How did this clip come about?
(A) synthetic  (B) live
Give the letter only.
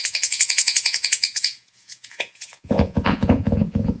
A